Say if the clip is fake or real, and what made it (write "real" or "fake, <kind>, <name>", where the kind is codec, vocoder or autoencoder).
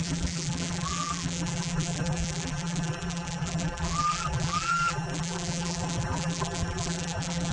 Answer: fake, vocoder, BigVGAN v2